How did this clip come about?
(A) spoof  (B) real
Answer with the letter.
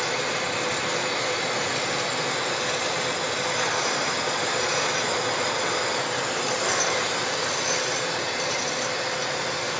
B